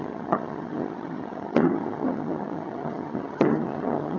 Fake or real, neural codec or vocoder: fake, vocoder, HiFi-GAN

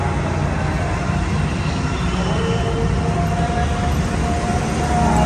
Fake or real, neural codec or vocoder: real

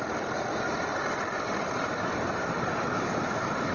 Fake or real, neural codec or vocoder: real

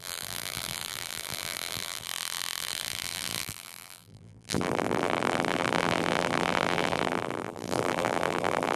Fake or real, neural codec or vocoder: fake, vocoder, BigVGAN v2